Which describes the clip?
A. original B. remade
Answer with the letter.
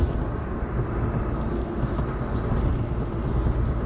A